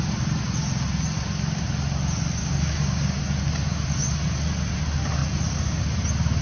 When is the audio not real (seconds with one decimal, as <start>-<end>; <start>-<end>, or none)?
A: 2.4-3.2